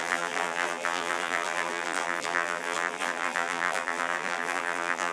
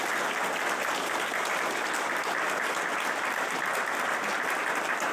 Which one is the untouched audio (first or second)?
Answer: second